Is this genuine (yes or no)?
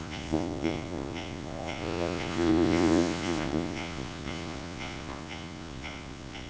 no